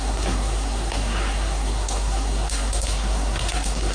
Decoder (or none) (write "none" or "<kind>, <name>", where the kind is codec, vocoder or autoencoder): codec, SNAC